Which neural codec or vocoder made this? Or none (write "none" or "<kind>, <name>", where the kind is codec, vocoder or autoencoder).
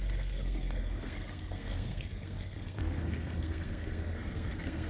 codec, SNAC